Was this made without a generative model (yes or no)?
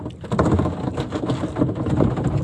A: yes